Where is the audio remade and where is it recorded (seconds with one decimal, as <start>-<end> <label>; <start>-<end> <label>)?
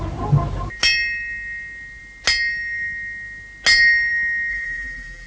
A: 0.0-4.5 recorded; 4.5-5.3 remade